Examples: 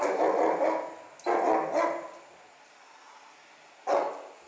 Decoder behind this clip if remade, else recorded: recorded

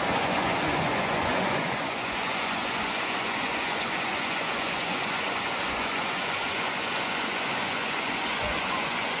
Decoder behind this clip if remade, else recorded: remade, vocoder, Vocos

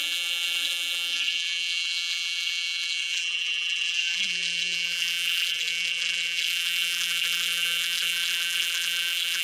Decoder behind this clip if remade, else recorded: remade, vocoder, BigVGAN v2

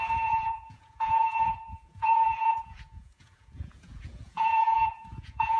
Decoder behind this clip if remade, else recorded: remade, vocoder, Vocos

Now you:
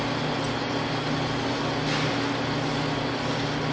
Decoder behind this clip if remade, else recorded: recorded